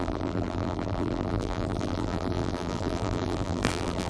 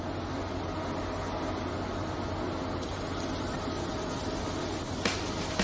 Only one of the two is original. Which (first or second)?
second